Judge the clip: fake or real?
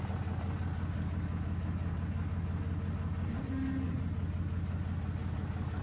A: real